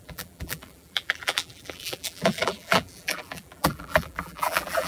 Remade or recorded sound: remade